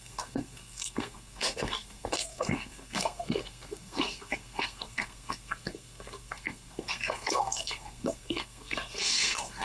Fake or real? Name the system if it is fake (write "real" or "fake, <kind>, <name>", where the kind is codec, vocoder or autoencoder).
fake, codec, SNAC